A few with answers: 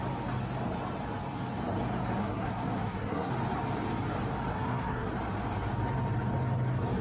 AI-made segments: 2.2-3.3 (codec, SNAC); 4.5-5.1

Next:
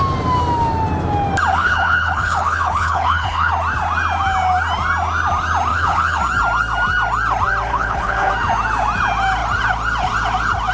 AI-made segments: 1.5-3.5 (codec, HILCodec); 5.7-6.2; 7.7-8.3

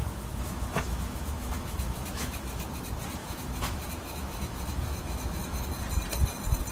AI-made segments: 0.0-2.7 (autoencoder, DAC-VAE); 3.2-5.7

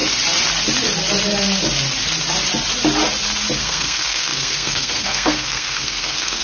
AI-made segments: 3.6-6.4 (codec, SNAC)